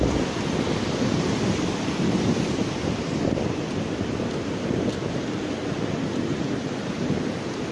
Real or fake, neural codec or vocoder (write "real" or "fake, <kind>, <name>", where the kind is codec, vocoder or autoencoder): real